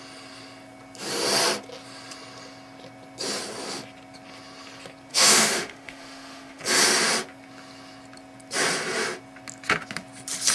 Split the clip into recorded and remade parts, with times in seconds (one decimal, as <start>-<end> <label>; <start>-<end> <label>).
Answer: 0.0-5.1 recorded; 5.1-6.6 remade; 6.6-10.5 recorded